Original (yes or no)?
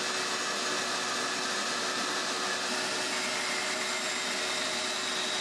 yes